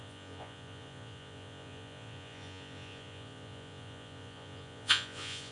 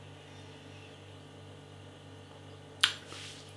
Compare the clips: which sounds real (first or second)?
second